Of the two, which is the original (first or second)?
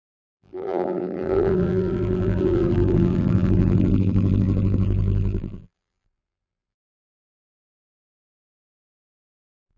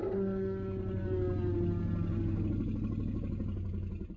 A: second